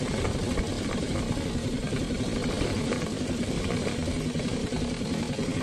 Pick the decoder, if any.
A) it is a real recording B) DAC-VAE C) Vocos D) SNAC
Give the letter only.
A